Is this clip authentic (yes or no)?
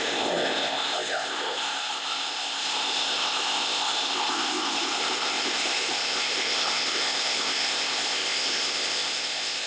no